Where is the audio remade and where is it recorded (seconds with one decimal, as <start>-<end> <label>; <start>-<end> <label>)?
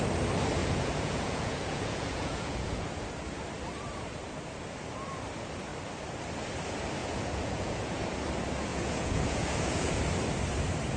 0.0-0.6 recorded; 0.6-2.9 remade; 2.9-7.0 recorded; 7.0-8.0 remade; 8.0-8.7 recorded; 8.7-10.0 remade; 10.0-11.0 recorded